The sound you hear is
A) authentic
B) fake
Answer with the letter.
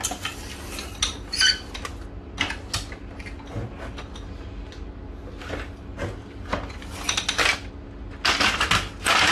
A